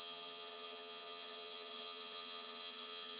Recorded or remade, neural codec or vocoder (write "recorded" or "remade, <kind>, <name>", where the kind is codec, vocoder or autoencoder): remade, vocoder, HiFi-GAN